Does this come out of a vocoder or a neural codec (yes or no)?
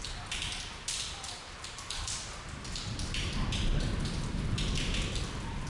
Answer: yes